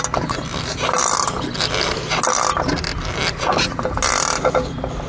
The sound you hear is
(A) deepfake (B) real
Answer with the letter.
B